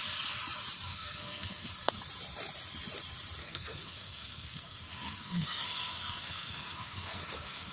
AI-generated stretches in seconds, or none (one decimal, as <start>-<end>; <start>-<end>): 0.9-1.7; 3.4-7.7